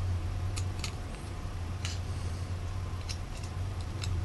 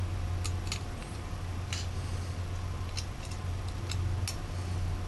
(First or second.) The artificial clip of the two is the first